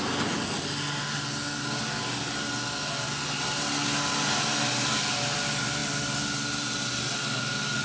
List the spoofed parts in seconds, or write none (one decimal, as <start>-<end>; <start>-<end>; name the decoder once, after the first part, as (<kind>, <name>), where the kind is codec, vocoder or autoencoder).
none